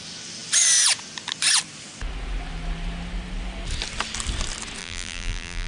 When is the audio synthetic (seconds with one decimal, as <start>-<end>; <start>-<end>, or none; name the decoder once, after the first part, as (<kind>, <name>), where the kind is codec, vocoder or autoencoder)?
4.8-5.7 (vocoder, BigVGAN v2)